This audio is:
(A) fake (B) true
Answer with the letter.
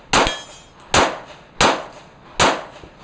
B